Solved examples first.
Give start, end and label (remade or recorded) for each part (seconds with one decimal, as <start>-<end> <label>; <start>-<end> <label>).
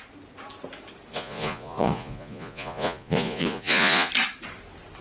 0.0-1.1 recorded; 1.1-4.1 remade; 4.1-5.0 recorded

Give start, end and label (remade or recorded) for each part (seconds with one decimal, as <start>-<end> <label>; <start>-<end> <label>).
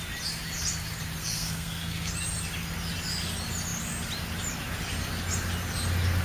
0.0-1.2 recorded; 1.2-2.1 remade; 2.1-6.2 recorded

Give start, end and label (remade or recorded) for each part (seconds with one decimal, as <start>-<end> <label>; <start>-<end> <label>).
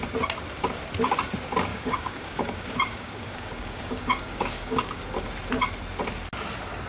0.0-1.7 recorded; 1.7-5.0 remade; 5.0-6.9 recorded